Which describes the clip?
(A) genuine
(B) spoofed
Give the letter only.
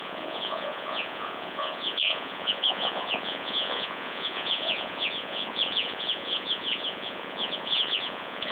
B